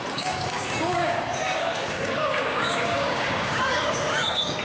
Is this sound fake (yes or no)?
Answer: yes